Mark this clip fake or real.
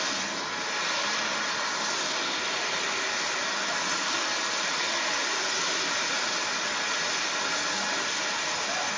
real